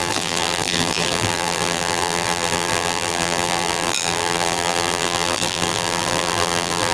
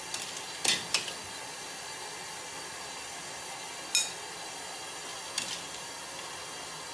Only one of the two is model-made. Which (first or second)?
first